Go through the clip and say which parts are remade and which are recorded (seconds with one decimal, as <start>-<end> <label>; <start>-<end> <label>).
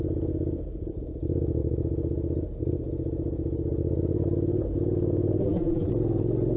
0.0-5.4 recorded; 5.4-5.9 remade; 5.9-6.6 recorded